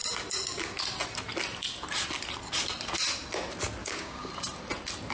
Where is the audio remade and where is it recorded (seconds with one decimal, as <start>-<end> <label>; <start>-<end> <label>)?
0.0-3.8 recorded; 3.8-4.3 remade; 4.3-5.1 recorded